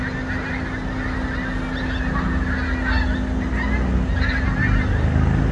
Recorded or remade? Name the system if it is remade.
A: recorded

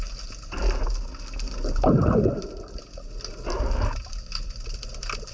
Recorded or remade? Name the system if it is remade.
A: recorded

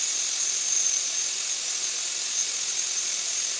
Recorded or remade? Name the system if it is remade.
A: recorded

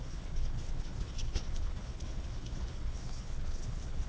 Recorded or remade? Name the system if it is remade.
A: remade, codec, HILCodec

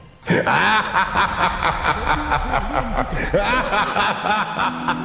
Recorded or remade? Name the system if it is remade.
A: recorded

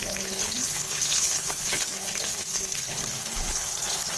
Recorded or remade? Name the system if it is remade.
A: remade, codec, HILCodec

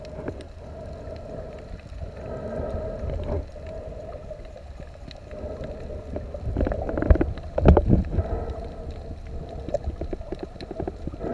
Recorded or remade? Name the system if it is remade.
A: recorded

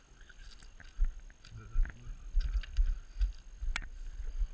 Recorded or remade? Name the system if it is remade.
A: recorded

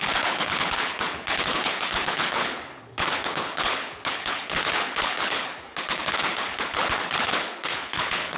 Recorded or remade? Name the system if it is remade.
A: remade, codec, HILCodec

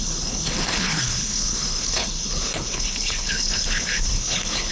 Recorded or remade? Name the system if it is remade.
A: remade, codec, HILCodec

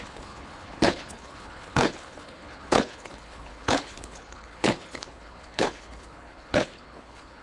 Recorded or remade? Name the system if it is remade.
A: remade, codec, HILCodec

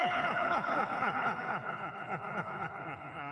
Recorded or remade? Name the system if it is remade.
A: remade, codec, HILCodec